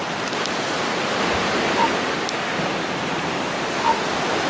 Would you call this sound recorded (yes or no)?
yes